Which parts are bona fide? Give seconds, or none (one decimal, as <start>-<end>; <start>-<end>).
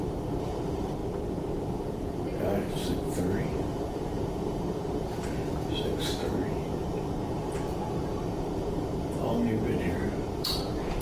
1.0-1.6; 6.0-7.3; 9.2-9.9